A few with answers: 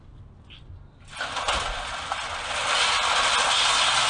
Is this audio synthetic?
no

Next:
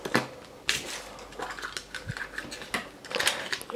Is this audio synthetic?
no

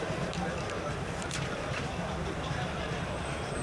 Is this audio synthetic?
yes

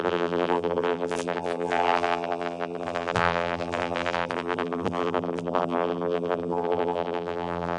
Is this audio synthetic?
yes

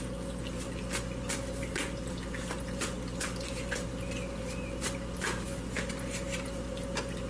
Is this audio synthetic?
no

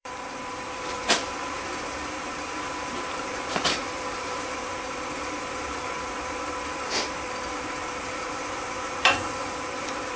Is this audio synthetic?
yes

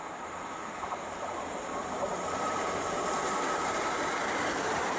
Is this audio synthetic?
yes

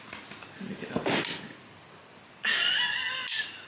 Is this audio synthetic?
no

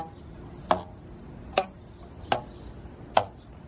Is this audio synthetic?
no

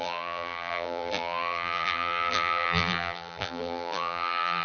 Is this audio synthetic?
yes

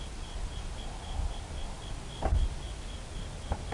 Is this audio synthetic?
no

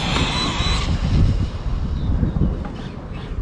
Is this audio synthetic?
no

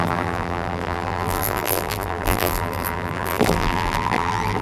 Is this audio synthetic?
yes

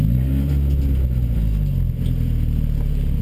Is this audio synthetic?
no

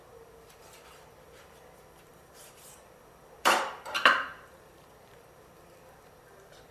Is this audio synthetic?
yes